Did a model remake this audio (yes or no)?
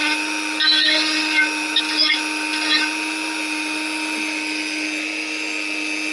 no